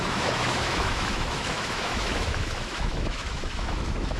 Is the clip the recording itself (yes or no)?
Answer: no